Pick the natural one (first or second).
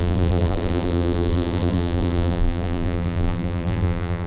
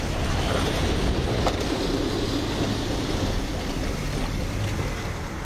second